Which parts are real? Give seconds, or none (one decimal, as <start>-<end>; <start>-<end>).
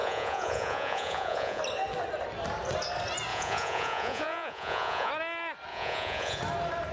1.6-3.3; 5.1-5.7; 6.4-6.9